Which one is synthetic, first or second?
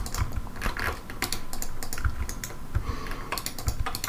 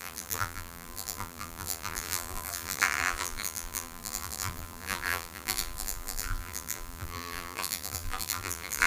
second